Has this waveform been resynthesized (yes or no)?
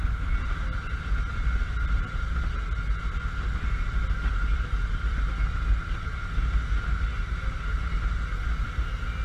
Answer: no